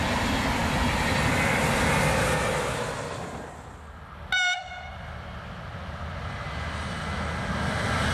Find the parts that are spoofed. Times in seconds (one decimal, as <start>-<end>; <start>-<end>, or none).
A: 5.7-6.3